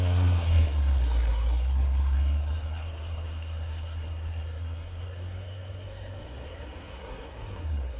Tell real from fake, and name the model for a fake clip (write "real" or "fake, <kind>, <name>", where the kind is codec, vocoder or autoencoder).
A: fake, codec, SNAC